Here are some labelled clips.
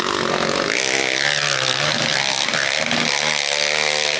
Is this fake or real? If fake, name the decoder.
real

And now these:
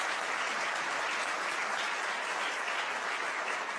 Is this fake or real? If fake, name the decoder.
real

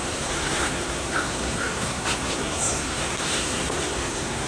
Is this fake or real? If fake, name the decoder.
fake, codec, SNAC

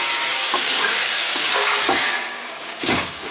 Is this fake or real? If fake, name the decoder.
fake, codec, DAC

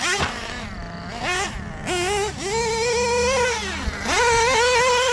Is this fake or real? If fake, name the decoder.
real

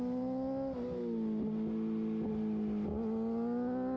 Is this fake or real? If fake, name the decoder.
real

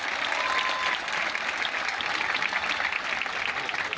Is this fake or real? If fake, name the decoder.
real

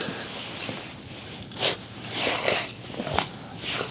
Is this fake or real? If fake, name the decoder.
real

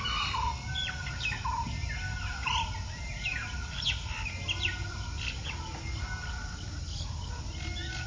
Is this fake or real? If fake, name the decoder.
real